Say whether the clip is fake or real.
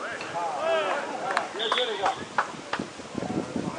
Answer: real